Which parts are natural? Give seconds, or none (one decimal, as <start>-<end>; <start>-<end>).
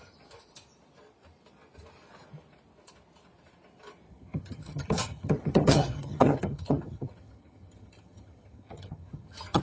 0.0-4.1